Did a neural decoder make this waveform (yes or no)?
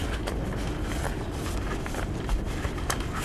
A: no